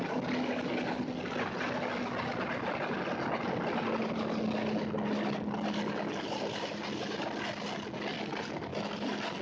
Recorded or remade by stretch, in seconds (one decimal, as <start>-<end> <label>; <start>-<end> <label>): 0.0-9.4 recorded